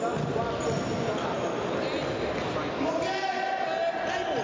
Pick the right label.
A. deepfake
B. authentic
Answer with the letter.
B